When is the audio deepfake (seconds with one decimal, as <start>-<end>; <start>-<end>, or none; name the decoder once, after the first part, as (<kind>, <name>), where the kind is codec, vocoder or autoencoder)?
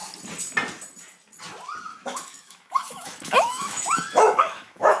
1.9-5.0 (autoencoder, DAC-VAE)